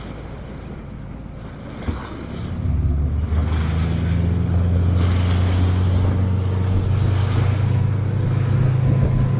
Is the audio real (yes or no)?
yes